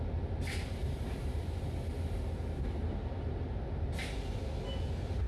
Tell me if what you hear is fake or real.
real